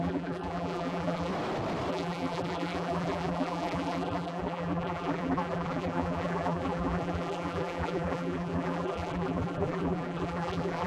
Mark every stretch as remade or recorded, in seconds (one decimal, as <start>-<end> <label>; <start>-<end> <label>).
0.0-1.3 remade; 1.3-1.9 recorded; 1.9-10.9 remade